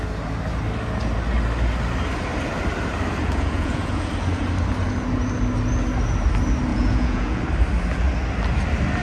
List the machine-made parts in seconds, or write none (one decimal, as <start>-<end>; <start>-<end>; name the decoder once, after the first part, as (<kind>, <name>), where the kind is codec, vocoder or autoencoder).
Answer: 3.2-4.1 (vocoder, Vocos); 6.7-7.4